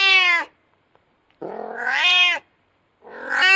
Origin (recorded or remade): remade